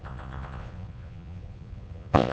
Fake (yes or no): yes